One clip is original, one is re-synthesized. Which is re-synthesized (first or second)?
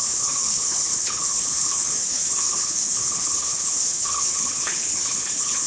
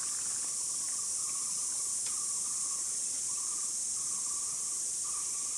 first